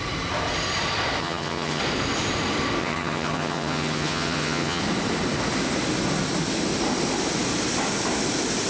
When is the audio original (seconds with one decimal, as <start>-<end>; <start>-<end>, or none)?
0.0-1.2; 1.8-2.8; 4.8-8.7